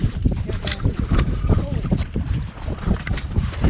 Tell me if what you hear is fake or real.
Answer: fake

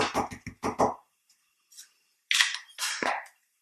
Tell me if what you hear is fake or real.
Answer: real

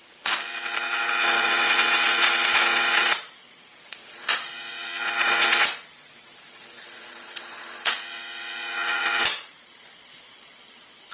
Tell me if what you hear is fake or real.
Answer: fake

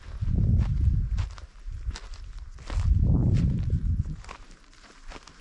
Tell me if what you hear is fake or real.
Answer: real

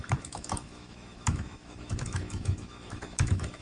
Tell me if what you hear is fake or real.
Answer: fake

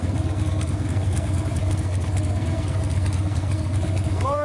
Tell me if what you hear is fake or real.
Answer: fake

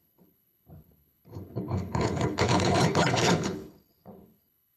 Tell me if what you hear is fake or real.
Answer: fake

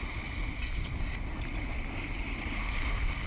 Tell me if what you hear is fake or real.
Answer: real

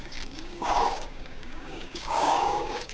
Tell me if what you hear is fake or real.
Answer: fake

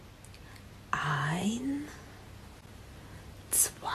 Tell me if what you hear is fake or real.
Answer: real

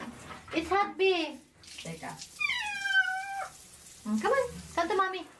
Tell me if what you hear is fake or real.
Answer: real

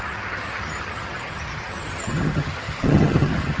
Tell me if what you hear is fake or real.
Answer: fake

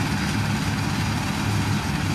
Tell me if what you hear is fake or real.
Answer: real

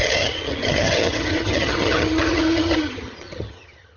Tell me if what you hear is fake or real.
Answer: fake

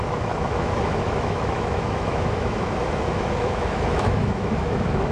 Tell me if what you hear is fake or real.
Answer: fake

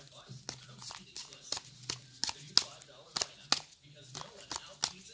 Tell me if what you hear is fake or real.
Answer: real